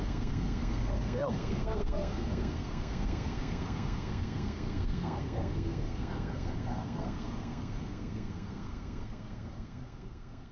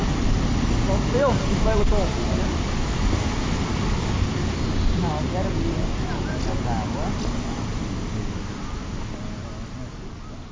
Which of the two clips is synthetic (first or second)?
first